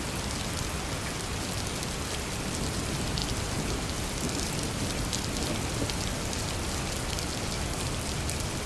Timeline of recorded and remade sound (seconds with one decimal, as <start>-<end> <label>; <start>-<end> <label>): 0.0-8.7 recorded